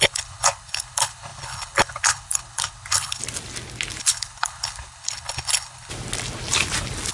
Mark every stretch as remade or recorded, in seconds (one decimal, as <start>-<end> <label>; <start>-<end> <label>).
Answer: 0.0-3.2 remade; 3.2-4.0 recorded; 4.0-5.9 remade; 5.9-7.1 recorded